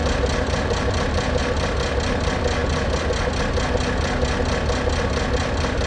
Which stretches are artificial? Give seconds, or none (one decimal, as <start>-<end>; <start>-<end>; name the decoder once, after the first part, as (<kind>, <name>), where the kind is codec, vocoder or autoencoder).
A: 0.0-1.4 (vocoder, BigVGAN v2)